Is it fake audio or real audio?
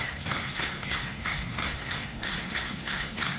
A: fake